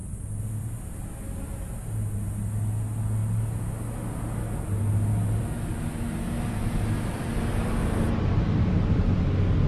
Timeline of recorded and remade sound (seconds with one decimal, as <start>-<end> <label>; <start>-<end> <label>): 0.0-9.7 recorded